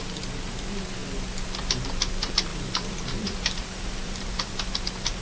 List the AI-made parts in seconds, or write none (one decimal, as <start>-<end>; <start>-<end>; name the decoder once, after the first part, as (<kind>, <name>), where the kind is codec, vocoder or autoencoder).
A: 2.5-5.2 (vocoder, BigVGAN v2)